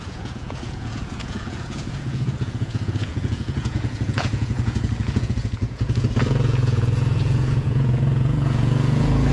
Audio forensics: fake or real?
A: fake